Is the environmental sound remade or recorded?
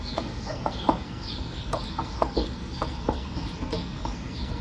remade